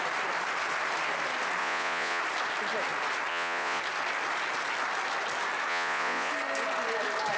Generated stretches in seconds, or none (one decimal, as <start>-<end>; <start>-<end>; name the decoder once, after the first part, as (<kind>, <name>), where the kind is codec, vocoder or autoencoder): 1.6-2.2 (vocoder, Vocos); 3.3-3.8; 5.7-6.3